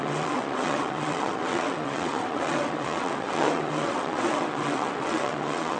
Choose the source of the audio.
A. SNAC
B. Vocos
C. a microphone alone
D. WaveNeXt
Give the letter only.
D